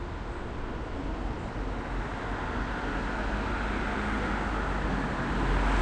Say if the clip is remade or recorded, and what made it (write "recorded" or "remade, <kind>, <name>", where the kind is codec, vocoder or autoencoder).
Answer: recorded